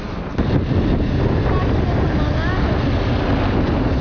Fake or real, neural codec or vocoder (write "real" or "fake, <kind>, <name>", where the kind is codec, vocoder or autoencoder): real